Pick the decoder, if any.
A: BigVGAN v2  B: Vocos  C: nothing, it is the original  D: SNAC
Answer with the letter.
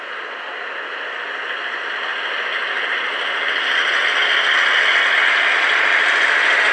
C